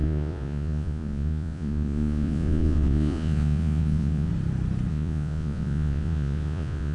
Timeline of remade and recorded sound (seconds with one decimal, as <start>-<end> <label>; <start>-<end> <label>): 0.0-4.3 remade; 4.3-4.9 recorded; 4.9-6.9 remade